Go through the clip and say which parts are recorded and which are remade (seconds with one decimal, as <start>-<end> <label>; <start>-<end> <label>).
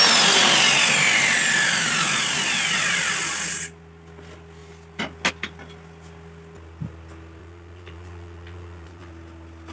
0.0-7.4 recorded; 7.4-9.1 remade; 9.1-9.7 recorded